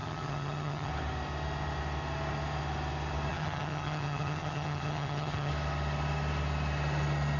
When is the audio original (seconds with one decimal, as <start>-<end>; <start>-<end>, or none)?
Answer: 0.9-3.3; 5.5-7.4